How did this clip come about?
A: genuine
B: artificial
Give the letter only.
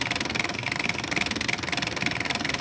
A